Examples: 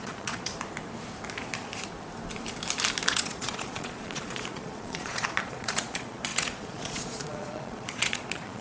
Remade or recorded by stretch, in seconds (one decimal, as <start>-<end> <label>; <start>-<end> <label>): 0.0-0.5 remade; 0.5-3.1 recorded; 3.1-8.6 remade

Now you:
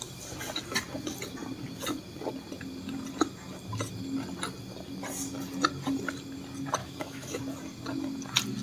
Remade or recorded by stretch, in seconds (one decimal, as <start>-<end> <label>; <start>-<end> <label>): 0.0-6.8 recorded; 6.8-7.4 remade; 7.4-8.6 recorded

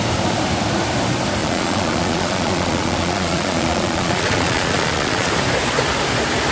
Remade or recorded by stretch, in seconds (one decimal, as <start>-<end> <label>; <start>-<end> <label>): 0.0-1.4 recorded; 1.4-5.3 remade; 5.3-6.5 recorded

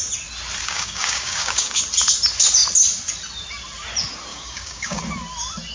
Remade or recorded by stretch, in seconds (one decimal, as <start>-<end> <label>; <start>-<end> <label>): 0.0-0.6 recorded; 0.6-1.8 remade; 1.8-4.3 recorded; 4.3-5.0 remade; 5.0-5.7 recorded

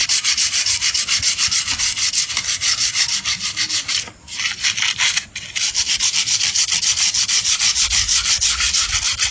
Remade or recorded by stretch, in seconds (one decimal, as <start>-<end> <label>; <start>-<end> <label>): 0.0-9.3 recorded

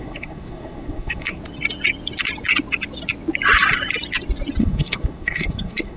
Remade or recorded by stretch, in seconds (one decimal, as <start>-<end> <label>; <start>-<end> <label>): 0.0-1.4 remade; 1.4-4.6 recorded; 4.6-6.0 remade